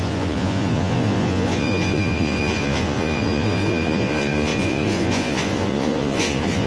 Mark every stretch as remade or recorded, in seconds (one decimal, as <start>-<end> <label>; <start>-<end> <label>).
0.0-6.7 remade